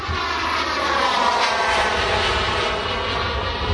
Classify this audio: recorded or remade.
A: recorded